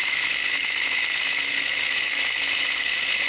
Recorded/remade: remade